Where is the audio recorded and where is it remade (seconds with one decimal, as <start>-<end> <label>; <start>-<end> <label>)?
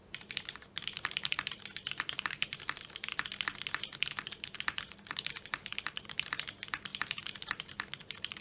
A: 0.0-3.1 remade; 3.1-3.8 recorded; 3.8-8.4 remade